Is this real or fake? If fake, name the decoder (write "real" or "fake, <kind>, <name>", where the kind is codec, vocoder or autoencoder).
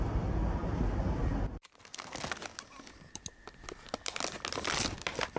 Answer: real